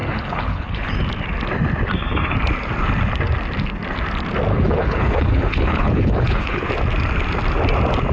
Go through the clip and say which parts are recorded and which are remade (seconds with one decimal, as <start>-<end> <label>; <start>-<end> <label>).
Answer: 0.0-0.9 remade; 0.9-4.5 recorded; 4.5-6.7 remade; 6.7-8.1 recorded